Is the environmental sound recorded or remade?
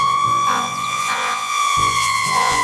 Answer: remade